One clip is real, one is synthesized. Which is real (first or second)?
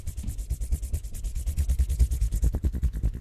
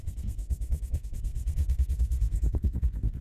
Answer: first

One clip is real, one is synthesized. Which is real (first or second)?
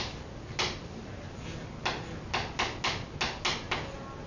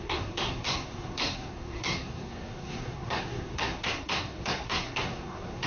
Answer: first